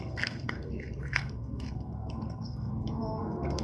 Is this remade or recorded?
remade